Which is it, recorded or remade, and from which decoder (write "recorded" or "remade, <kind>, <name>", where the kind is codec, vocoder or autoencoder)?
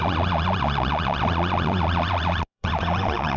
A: remade, vocoder, Vocos